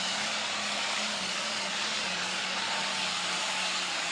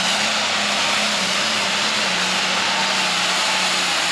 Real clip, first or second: second